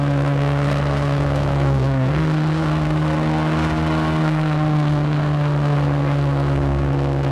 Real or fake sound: fake